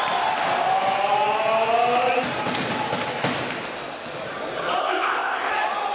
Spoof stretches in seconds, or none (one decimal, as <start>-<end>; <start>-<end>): 4.8-5.5